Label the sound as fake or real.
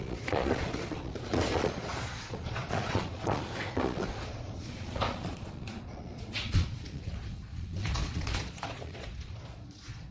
fake